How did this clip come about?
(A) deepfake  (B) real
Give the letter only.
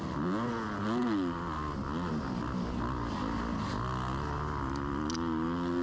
B